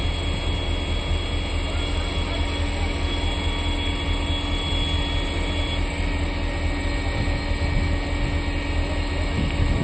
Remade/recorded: recorded